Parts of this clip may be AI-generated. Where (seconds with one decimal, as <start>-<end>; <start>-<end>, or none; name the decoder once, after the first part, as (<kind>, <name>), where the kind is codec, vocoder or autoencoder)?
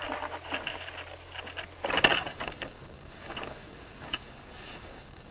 2.1-5.3 (codec, DAC)